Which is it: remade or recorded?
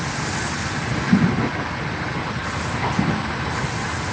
recorded